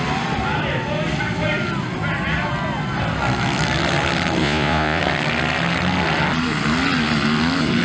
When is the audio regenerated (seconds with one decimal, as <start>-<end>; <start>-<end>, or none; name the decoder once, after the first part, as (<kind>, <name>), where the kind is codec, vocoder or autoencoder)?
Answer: 4.4-5.0 (vocoder, Vocos)